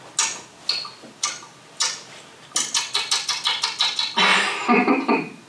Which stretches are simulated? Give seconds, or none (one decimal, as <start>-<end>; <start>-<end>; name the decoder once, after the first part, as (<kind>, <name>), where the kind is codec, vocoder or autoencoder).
none